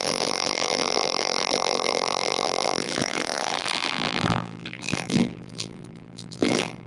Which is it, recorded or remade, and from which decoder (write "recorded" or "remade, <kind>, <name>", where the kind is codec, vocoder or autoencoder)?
remade, vocoder, BigVGAN v2